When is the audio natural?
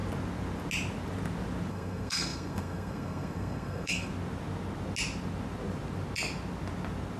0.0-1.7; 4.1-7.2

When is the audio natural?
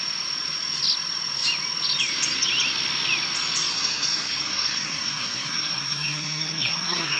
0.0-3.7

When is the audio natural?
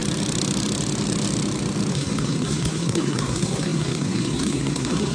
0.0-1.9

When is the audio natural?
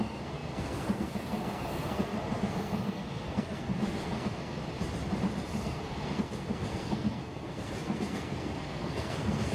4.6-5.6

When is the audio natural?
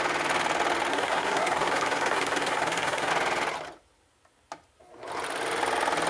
0.0-0.9; 3.1-6.1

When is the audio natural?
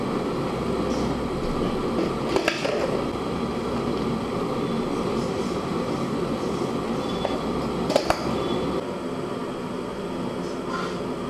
0.0-11.3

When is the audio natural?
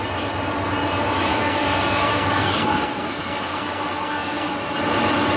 0.0-1.3; 4.5-5.4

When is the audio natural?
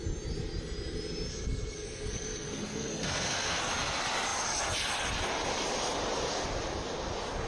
0.0-1.3; 3.6-7.5